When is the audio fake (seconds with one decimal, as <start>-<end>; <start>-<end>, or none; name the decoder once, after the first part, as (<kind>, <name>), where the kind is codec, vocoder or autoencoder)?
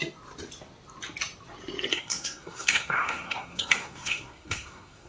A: 1.9-5.1 (codec, SNAC)